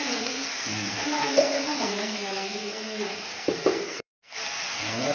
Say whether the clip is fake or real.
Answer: fake